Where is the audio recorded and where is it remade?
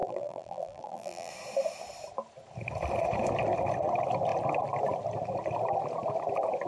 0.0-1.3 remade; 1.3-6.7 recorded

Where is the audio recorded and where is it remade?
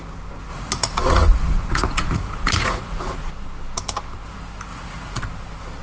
0.0-0.5 recorded; 0.5-3.3 remade; 3.3-4.7 recorded; 4.7-5.2 remade; 5.2-5.8 recorded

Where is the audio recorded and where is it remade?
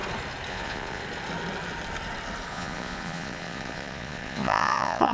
0.0-0.5 recorded; 0.5-1.0 remade; 1.0-2.5 recorded; 2.5-5.1 remade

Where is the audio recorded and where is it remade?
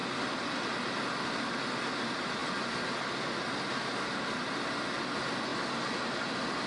0.0-6.7 recorded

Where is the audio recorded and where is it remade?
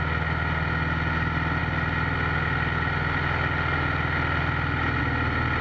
0.0-5.6 recorded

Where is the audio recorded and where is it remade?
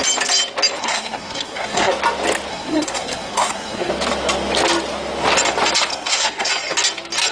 0.0-0.8 recorded; 0.8-1.9 remade; 1.9-2.5 recorded; 2.5-3.9 remade; 3.9-5.9 recorded; 5.9-6.5 remade; 6.5-7.3 recorded